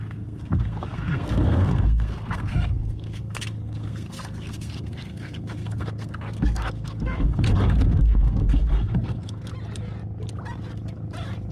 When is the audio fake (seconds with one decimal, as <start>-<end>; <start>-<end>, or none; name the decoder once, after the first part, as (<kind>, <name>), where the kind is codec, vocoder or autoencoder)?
0.0-9.5 (codec, SNAC)